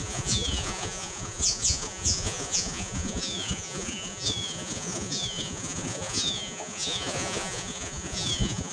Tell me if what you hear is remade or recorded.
remade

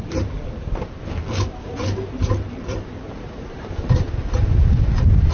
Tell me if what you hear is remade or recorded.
remade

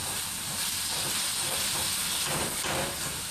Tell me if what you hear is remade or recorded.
recorded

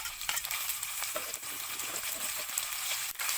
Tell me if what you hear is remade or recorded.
remade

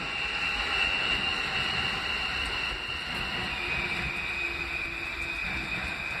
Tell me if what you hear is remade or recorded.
recorded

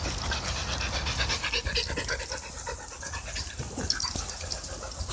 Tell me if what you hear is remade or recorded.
recorded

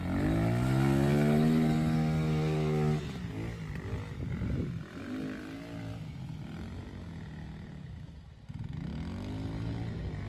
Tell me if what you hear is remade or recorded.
recorded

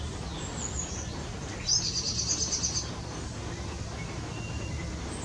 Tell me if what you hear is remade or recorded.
recorded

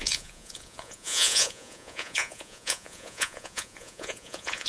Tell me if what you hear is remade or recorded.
remade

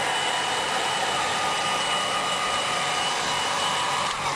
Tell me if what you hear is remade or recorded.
remade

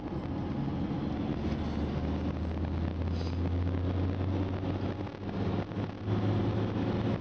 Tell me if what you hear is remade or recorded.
recorded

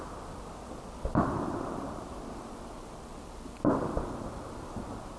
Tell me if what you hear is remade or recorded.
recorded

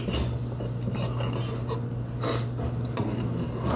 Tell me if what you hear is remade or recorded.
recorded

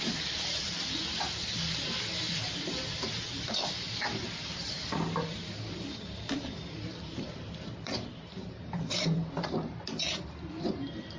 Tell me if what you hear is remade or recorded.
remade